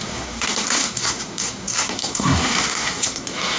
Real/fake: fake